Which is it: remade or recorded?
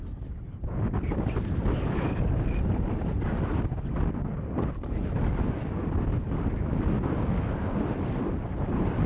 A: recorded